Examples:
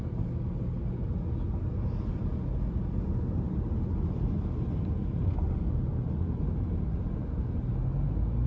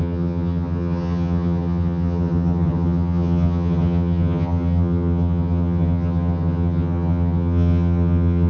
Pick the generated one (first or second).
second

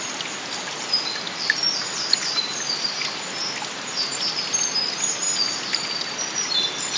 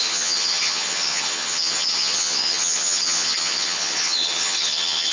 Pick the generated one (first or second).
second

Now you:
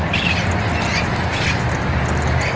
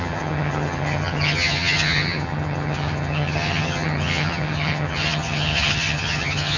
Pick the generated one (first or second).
second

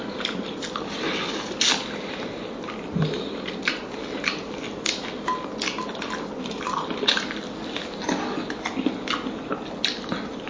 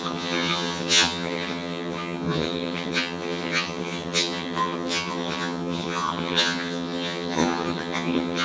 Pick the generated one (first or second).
second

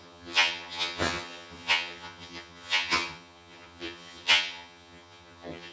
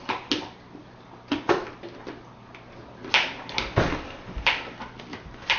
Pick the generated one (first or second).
first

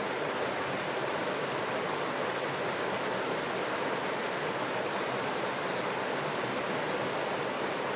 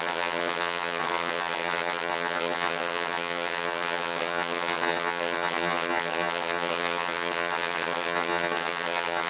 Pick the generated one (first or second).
second